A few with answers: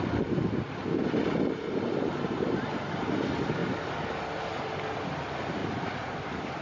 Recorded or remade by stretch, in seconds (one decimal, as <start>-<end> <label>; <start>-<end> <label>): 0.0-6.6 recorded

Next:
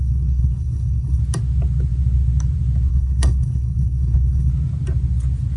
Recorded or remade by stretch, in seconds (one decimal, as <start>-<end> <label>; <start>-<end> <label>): 0.0-1.2 remade; 1.2-2.9 recorded; 2.9-4.5 remade; 4.5-5.6 recorded

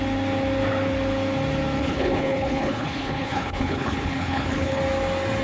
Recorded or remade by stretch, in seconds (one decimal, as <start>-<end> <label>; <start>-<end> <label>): 0.0-1.8 recorded; 1.8-4.8 remade; 4.8-5.4 recorded

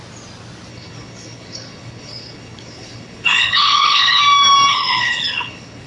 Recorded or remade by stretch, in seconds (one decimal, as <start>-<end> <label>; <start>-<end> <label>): 0.0-0.7 recorded; 0.7-4.2 remade; 4.2-4.7 recorded; 4.7-5.9 remade

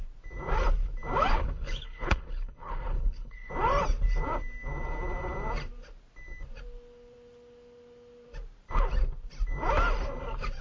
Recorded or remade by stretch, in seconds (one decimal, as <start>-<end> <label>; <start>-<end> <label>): 0.0-1.3 recorded; 1.3-3.5 remade; 3.5-10.6 recorded